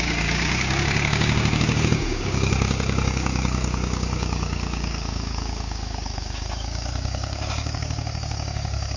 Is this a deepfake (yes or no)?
yes